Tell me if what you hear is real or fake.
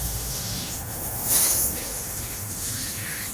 fake